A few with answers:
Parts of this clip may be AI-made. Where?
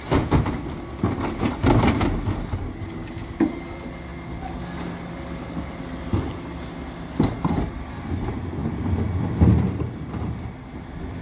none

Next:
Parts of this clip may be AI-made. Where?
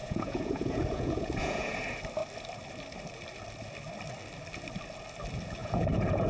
0.0-1.8 (vocoder, Vocos); 5.6-6.3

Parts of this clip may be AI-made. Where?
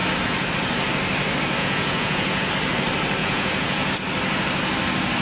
1.6-2.5 (vocoder, Vocos); 3.2-3.9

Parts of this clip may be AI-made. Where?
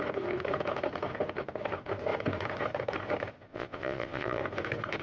3.5-4.4 (vocoder, Vocos)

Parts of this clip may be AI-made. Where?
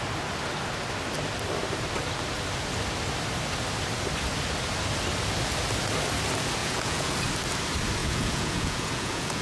6.6-7.1 (vocoder, Vocos); 8.0-9.4